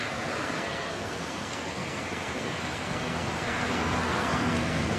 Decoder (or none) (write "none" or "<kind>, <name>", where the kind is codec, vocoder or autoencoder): codec, SNAC